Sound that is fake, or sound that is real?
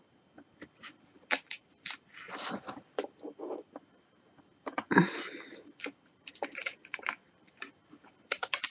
fake